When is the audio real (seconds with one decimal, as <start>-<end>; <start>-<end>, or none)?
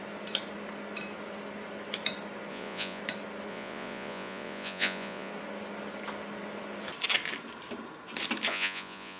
0.0-2.5; 3.0-3.5; 5.3-8.5